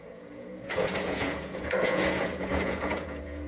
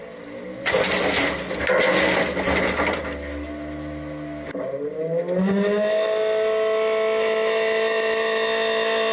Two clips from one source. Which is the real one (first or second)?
second